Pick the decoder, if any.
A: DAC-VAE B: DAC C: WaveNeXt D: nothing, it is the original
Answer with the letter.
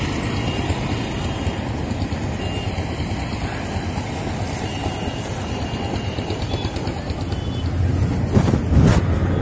D